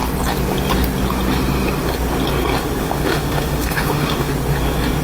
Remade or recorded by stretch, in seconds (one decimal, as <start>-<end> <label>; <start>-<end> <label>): 0.0-2.8 recorded; 2.8-4.3 remade; 4.3-5.0 recorded